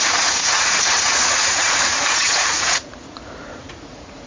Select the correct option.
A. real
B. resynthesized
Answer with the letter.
B